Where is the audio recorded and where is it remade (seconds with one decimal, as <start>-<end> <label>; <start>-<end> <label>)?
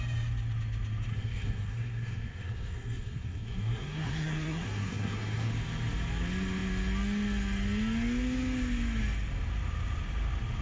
0.0-1.1 recorded; 1.1-5.5 remade; 5.5-10.6 recorded